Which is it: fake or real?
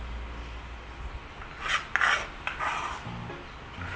real